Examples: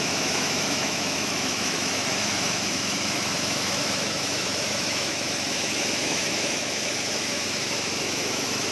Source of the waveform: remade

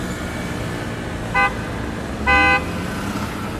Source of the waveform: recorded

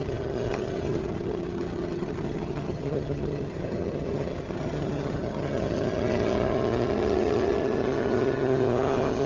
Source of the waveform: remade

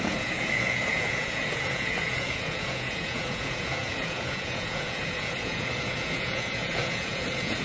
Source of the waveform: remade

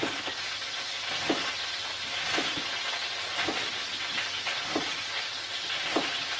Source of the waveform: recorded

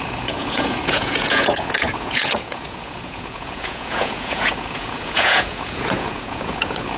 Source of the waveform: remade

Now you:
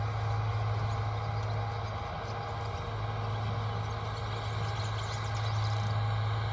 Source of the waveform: recorded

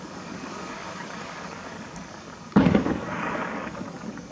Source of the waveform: remade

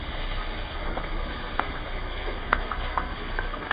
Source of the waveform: remade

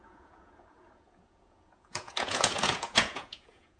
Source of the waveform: remade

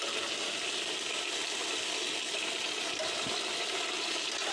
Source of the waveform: recorded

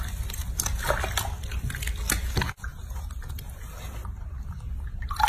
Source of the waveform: recorded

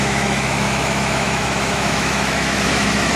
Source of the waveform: remade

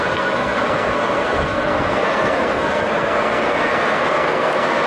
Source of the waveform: remade